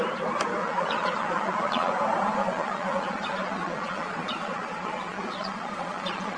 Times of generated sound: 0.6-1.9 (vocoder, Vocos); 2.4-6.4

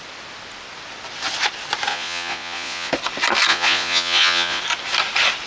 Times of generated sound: 1.9-2.9 (vocoder, Vocos); 3.5-4.6

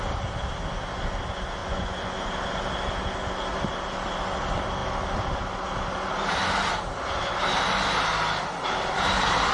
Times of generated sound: 1.6-2.3 (vocoder, Vocos)

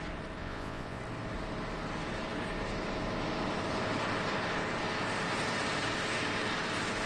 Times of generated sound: 0.4-1.0 (vocoder, Vocos)

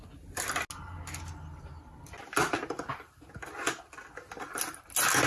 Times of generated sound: none

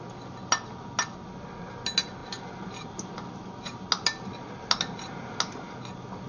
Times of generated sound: none

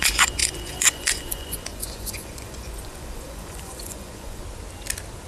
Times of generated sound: 0.0-4.4 (vocoder, Vocos)